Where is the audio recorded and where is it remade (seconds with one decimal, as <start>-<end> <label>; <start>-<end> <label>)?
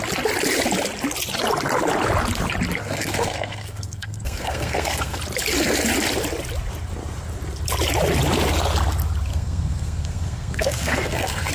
0.0-2.8 recorded; 2.8-5.2 remade; 5.2-9.3 recorded; 9.3-11.5 remade